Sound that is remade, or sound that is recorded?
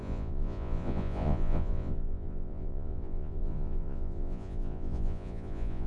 remade